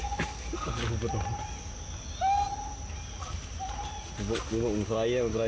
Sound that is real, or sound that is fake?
real